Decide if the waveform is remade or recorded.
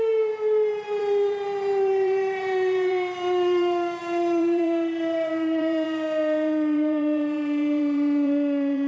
remade